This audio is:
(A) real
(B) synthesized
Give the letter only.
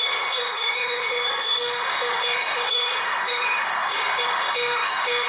B